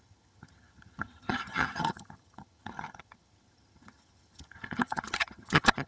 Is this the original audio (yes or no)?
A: no